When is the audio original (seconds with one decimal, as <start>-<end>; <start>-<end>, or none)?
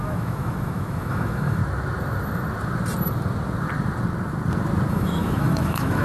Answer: 1.6-4.9